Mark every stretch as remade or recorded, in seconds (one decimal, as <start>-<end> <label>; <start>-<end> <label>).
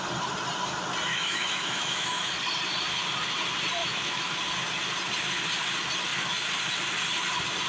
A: 0.0-1.1 recorded; 1.1-2.3 remade; 2.3-3.8 recorded; 3.8-4.4 remade; 4.4-7.7 recorded